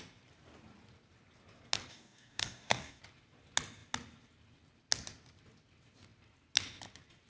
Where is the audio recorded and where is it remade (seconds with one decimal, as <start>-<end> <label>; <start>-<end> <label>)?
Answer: 0.0-1.9 recorded; 1.9-3.0 remade; 3.0-7.3 recorded